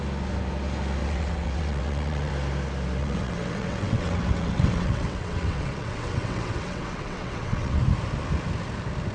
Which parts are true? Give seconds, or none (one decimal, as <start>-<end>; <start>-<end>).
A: 0.0-1.0; 2.3-3.0; 7.8-9.1